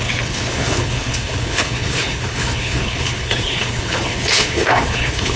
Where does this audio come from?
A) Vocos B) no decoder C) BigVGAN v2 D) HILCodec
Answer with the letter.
D